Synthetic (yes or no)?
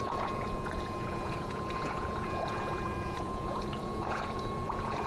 yes